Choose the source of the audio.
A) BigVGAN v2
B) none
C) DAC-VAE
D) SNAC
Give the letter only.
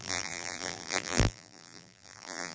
A